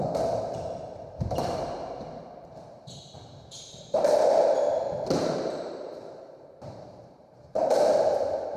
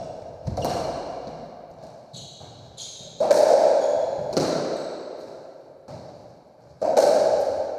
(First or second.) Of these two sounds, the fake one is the first